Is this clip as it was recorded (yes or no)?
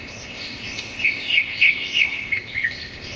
no